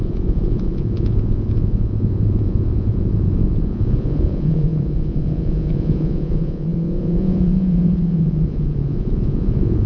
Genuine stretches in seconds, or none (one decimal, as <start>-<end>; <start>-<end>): none